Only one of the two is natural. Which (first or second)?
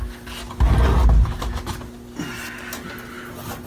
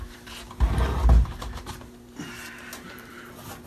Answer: first